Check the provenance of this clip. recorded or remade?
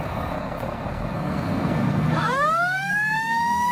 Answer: remade